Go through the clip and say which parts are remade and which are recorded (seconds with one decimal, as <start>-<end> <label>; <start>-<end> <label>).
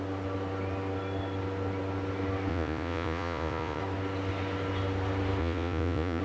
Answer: 0.0-2.5 recorded; 2.5-3.8 remade; 3.8-5.4 recorded; 5.4-6.2 remade